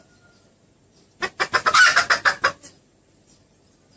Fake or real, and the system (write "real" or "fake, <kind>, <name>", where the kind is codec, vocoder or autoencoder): real